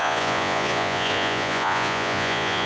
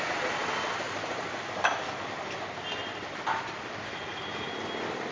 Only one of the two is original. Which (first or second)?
second